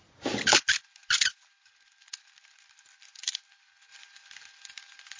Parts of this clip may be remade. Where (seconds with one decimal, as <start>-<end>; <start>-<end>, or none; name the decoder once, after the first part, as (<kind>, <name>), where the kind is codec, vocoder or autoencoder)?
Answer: 1.0-3.5 (vocoder, BigVGAN v2); 3.9-5.2